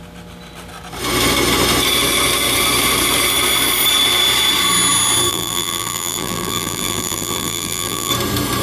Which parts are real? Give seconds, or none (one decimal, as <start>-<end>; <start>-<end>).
0.0-5.3; 8.1-8.6

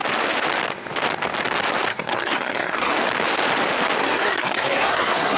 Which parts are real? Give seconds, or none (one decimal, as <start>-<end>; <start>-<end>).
0.0-1.9; 2.9-4.0

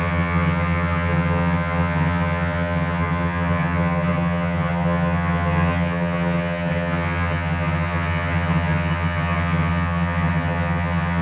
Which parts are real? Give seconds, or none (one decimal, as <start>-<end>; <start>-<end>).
none

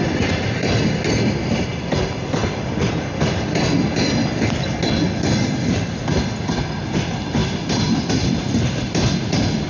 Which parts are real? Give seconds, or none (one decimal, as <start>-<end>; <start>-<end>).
0.0-9.7

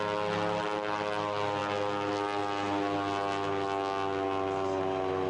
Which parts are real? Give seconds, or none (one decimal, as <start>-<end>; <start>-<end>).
0.0-5.3

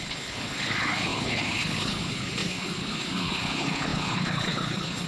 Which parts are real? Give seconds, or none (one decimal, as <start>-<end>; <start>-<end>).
none

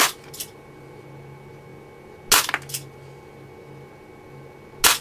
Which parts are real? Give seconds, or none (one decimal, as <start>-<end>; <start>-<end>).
0.0-5.0

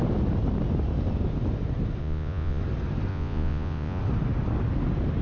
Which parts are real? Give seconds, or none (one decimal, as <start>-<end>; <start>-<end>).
0.0-2.0; 2.6-3.1; 4.0-5.2